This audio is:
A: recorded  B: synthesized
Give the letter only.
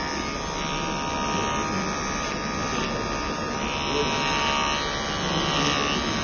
A